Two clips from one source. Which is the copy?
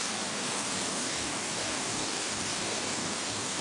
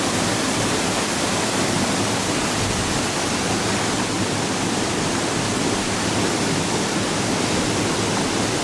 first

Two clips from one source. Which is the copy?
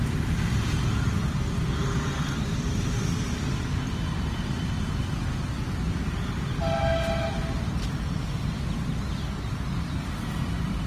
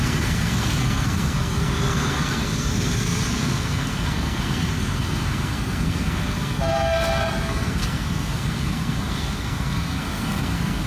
second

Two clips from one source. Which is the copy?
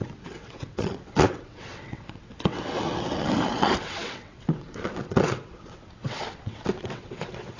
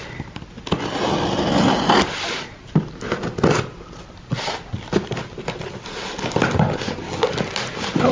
first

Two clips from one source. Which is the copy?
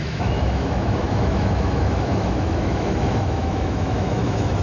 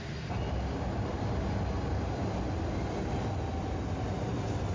first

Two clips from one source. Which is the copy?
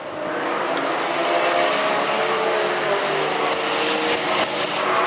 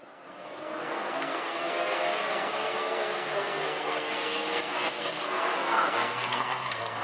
second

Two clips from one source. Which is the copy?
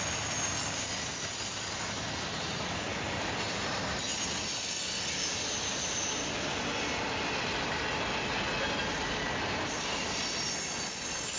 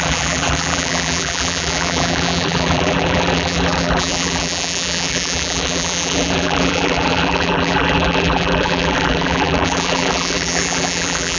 second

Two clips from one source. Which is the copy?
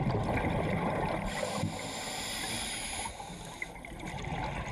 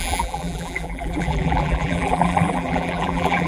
second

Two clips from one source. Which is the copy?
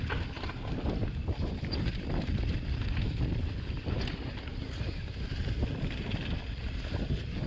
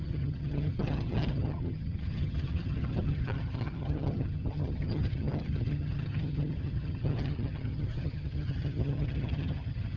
second